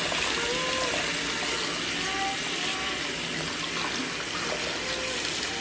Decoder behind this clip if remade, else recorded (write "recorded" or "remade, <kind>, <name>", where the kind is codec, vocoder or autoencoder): recorded